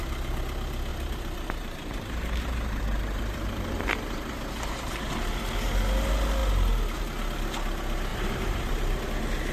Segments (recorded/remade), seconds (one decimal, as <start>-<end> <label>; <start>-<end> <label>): 0.0-0.9 recorded; 0.9-5.1 remade; 5.1-8.1 recorded; 8.1-9.1 remade; 9.1-9.5 recorded